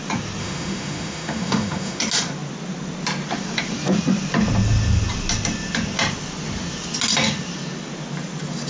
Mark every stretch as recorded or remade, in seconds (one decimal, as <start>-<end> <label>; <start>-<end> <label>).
0.0-0.4 recorded; 0.4-2.0 remade; 2.0-8.7 recorded